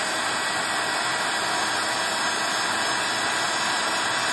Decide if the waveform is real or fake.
real